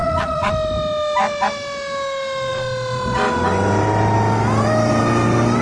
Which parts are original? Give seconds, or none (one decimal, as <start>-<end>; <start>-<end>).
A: 0.5-5.6